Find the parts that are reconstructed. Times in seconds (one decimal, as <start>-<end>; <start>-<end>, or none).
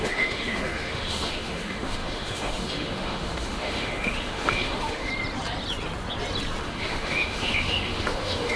0.0-5.1; 6.6-8.6